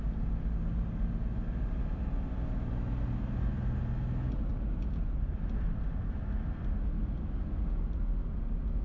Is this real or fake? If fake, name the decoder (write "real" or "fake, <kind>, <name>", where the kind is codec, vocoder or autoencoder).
real